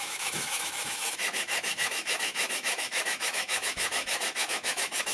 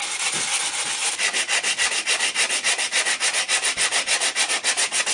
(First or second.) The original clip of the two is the second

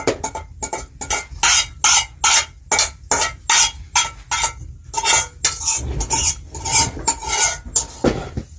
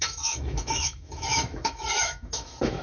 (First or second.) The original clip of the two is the first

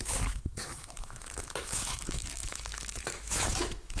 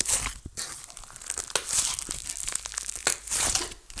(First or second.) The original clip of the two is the second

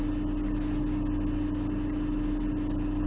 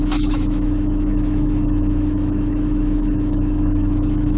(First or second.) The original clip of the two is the first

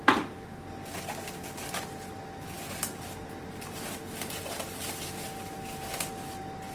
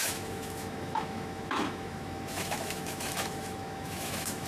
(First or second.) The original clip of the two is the first